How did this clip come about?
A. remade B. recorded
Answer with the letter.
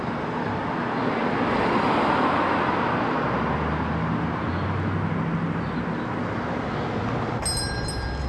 B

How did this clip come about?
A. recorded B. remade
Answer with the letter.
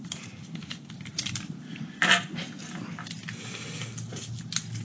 A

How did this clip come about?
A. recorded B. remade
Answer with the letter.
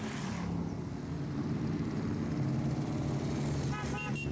A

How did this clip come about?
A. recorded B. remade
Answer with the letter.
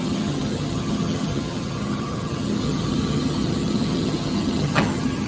B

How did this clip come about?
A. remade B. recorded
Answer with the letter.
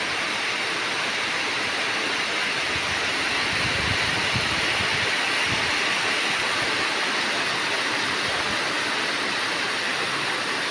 B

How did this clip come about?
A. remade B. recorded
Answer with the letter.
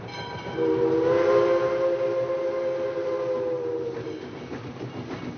B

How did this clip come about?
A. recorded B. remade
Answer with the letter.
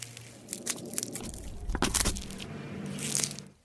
A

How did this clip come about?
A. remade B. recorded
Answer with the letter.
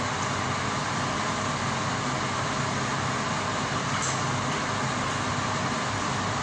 B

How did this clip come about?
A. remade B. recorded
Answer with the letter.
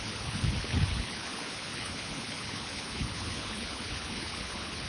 A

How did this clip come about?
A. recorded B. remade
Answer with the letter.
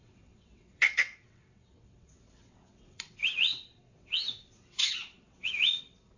B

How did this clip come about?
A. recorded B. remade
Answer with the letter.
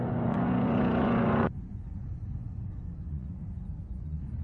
B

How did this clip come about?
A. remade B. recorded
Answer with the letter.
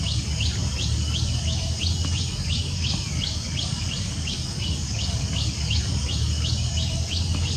A